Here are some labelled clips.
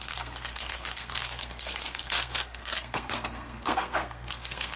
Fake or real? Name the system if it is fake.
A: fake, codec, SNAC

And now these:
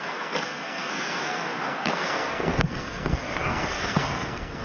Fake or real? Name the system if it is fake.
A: fake, codec, SNAC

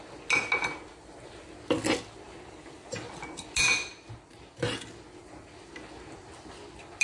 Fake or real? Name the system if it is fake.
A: real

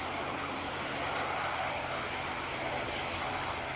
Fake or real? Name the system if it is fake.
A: real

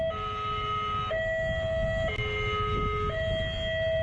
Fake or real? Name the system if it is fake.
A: real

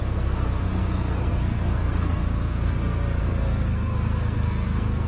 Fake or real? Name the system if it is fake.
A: fake, codec, SNAC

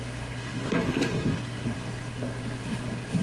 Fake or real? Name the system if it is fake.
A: fake, codec, SNAC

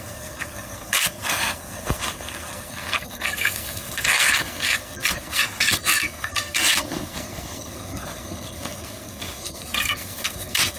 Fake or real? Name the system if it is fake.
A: fake, codec, SNAC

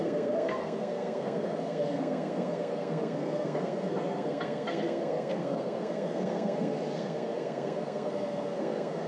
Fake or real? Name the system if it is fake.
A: fake, codec, SNAC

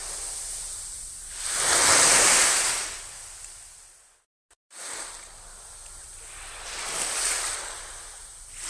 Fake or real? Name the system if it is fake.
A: real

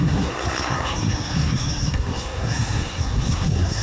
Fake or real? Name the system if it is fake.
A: fake, codec, SNAC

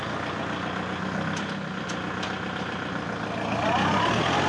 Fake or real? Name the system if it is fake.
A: real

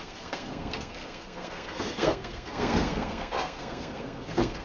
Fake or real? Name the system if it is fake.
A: fake, codec, SNAC